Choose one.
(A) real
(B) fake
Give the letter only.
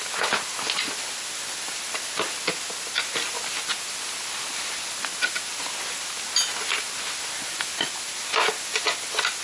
A